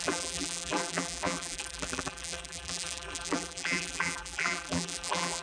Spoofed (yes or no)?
yes